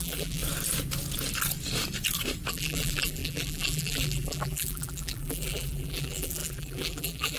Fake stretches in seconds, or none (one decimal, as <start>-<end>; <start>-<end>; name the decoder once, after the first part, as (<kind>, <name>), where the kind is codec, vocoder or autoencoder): 0.0-0.4 (vocoder, BigVGAN v2); 2.5-7.4